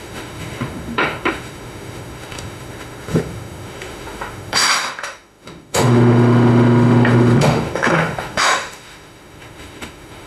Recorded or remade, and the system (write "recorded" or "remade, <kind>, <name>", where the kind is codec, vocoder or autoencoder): remade, autoencoder, DAC-VAE